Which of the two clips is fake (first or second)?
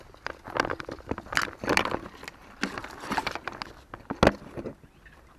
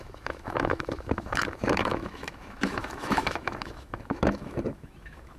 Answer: second